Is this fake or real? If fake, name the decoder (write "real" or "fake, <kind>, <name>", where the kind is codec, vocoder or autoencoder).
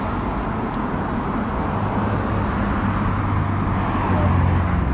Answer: real